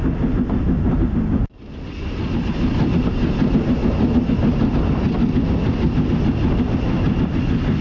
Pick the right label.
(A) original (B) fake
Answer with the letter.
A